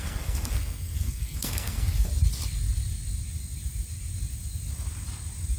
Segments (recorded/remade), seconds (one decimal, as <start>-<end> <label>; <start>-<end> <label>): 0.0-2.1 remade; 2.1-5.6 recorded